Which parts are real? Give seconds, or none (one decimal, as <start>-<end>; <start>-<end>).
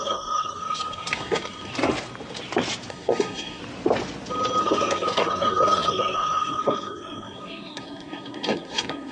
1.7-2.9; 3.6-4.6